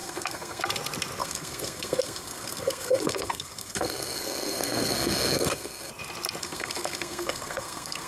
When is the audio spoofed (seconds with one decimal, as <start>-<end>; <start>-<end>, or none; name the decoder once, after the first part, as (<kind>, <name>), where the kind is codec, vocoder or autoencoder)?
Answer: 0.0-0.6 (codec, SNAC); 1.2-5.9; 6.4-8.1